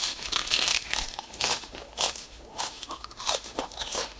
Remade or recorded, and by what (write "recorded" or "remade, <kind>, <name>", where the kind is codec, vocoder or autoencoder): remade, autoencoder, DAC-VAE